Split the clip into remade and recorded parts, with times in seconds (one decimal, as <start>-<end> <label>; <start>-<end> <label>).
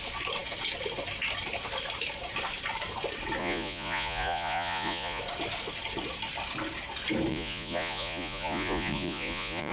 0.0-3.4 recorded; 3.4-5.2 remade; 5.2-7.3 recorded; 7.3-9.7 remade